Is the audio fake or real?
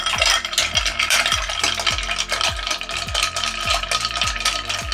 real